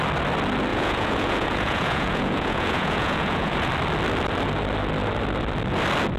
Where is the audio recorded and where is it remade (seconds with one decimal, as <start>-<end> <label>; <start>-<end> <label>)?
0.0-0.7 recorded; 0.7-3.7 remade; 3.7-6.2 recorded